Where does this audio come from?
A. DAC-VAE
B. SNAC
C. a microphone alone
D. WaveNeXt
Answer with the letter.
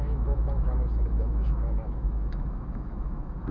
A